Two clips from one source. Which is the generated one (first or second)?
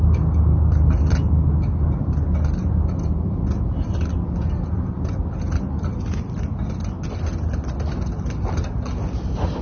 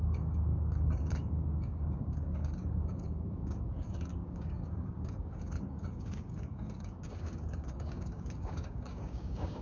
second